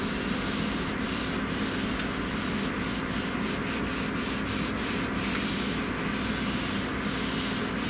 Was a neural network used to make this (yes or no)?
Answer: no